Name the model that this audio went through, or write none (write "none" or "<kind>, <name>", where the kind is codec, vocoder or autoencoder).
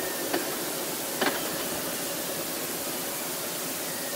none